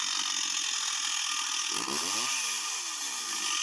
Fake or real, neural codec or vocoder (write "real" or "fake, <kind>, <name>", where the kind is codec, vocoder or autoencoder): real